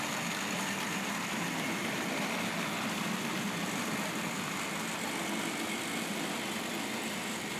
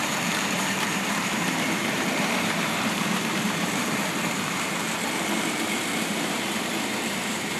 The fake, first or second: second